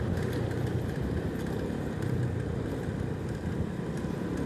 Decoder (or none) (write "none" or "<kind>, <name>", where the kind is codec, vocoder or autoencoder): none